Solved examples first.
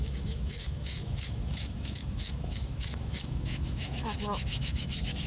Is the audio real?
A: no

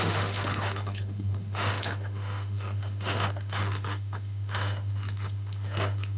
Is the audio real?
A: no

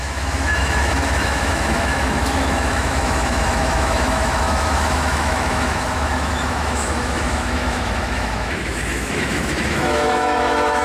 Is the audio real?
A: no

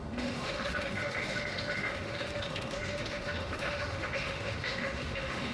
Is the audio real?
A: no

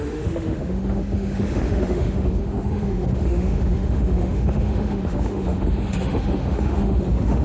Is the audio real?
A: no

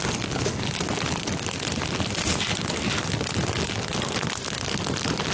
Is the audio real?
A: yes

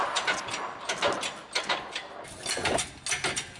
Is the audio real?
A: yes